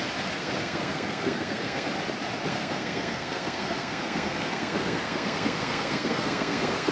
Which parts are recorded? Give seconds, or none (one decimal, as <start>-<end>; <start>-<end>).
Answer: 0.0-0.4; 1.9-2.5